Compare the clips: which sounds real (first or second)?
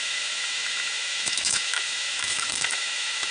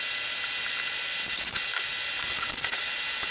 second